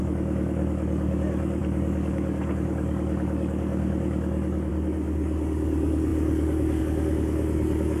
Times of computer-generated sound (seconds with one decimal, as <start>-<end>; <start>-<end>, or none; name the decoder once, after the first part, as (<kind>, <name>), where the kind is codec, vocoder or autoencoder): 0.0-8.0 (codec, DAC)